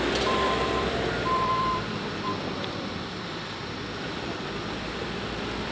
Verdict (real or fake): fake